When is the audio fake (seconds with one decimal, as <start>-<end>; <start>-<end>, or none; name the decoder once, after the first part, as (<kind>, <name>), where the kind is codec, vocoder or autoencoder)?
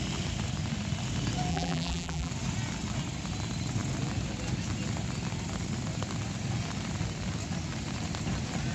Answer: 1.5-2.3 (vocoder, BigVGAN v2)